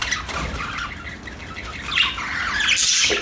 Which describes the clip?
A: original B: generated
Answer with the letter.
A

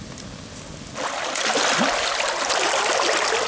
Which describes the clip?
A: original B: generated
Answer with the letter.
A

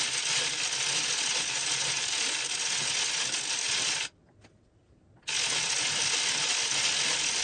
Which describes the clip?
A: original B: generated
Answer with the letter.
A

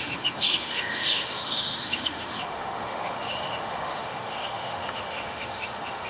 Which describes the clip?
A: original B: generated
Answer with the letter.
B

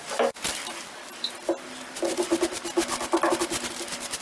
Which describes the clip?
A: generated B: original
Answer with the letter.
B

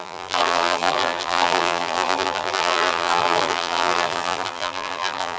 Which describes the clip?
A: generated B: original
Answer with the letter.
A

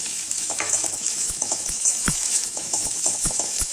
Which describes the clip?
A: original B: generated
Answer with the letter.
B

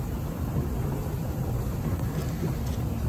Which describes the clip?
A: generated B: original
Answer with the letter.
B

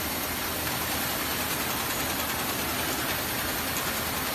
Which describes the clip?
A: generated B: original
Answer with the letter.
B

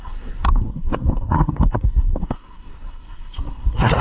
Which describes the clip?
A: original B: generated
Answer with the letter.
B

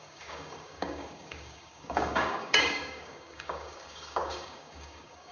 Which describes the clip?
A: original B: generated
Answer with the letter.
B